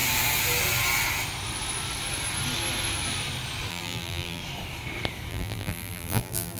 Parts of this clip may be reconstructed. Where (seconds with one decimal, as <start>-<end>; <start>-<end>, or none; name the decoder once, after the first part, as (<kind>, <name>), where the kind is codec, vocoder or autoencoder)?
3.7-4.4 (vocoder, BigVGAN v2); 5.3-6.6